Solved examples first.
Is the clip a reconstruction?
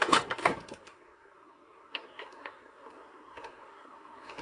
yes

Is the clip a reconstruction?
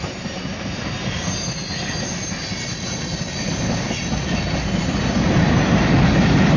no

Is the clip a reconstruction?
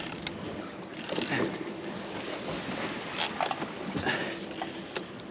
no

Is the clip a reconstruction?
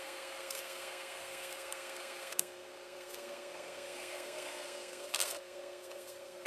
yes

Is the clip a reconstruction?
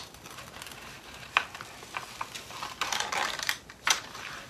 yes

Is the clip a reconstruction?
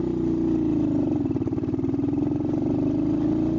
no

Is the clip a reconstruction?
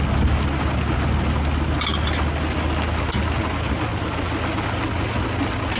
no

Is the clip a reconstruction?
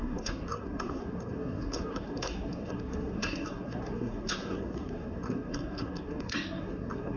yes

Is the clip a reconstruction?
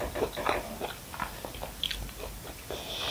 yes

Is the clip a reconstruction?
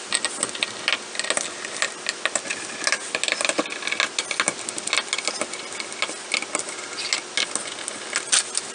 no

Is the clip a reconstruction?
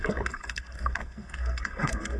yes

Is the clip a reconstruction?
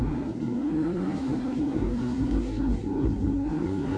yes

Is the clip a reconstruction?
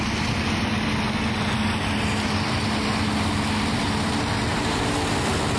no